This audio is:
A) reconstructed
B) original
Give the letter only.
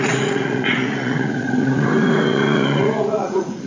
A